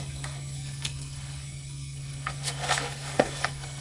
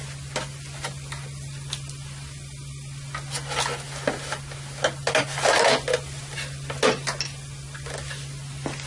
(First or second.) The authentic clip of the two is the second